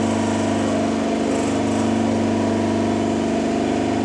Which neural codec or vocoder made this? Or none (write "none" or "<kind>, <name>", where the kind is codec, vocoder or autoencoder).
none